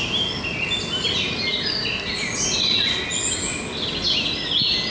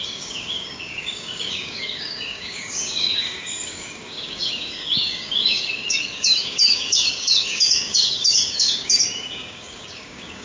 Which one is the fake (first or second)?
second